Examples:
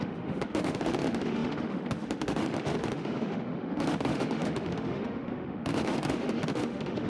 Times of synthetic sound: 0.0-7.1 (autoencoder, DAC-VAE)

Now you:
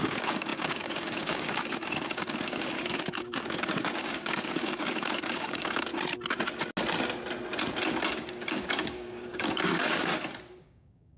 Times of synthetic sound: 0.0-5.9 (codec, DAC); 8.1-10.1; 10.6-11.2

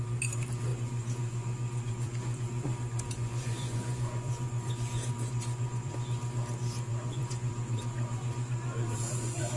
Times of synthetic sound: 0.7-5.9 (vocoder, Vocos); 6.9-9.6

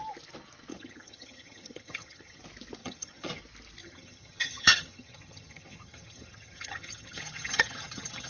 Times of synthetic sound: 0.7-2.4 (vocoder, HiFi-GAN); 2.8-3.4; 3.8-8.3

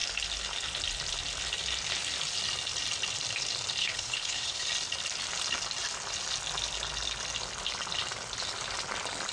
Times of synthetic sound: 3.8-4.7 (codec, HILCodec)

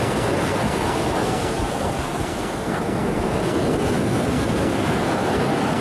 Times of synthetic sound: 0.0-5.8 (codec, SNAC)

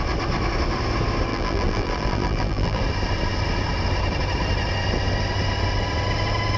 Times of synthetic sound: 1.3-2.8 (vocoder, BigVGAN v2)

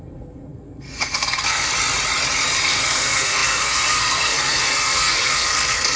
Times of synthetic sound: 0.0-1.7 (codec, SNAC); 2.6-6.0